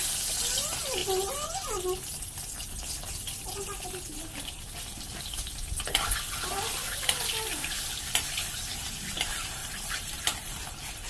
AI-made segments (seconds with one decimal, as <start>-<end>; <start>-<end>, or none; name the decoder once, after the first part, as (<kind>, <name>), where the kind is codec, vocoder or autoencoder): 9.6-10.2 (vocoder, BigVGAN v2)